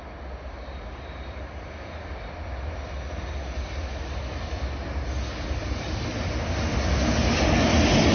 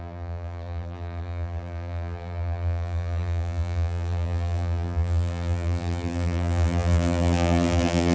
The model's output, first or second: second